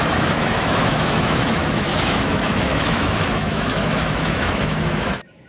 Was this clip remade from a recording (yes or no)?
yes